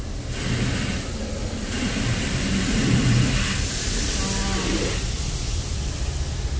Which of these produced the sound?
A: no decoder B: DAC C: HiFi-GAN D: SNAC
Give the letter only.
A